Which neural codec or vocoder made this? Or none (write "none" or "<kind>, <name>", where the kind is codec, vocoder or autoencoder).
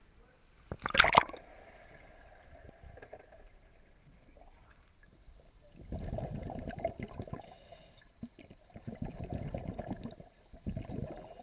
none